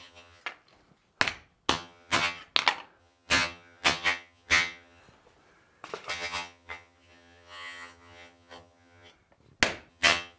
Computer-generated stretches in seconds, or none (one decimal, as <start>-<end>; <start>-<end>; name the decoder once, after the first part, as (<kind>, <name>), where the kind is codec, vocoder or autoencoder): 0.0-0.4 (vocoder, HiFi-GAN); 1.7-2.4; 3.0-5.0; 6.1-9.1; 9.9-10.4